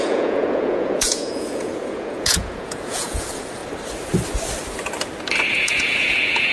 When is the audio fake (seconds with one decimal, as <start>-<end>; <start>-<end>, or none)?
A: 0.0-3.6; 5.4-6.5